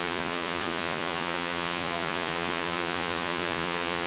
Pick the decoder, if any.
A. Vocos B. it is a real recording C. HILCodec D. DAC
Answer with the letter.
A